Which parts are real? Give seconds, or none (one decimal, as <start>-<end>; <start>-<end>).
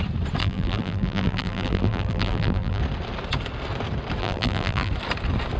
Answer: 0.0-0.4; 2.8-4.2; 4.9-5.6